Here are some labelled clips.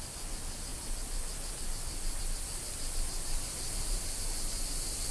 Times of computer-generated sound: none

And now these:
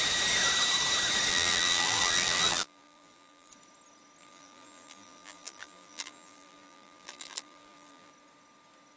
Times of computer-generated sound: 1.3-3.5 (vocoder, BigVGAN v2); 4.2-8.1

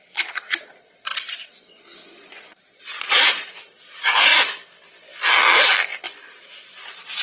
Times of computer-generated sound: 0.0-4.3 (vocoder, Vocos); 6.3-7.2

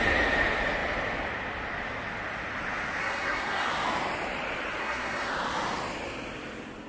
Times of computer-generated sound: 3.0-3.7 (codec, SNAC); 4.8-5.3

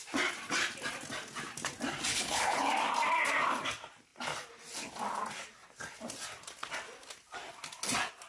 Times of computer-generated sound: 2.1-2.7 (codec, HILCodec)